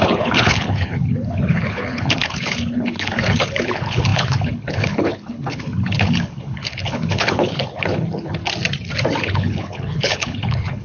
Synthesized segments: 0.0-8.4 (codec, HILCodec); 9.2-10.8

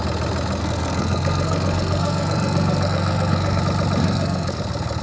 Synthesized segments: 0.6-3.6 (codec, SNAC); 4.0-4.6

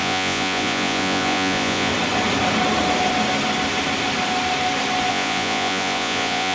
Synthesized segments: 0.0-1.9 (vocoder, Vocos); 5.1-6.5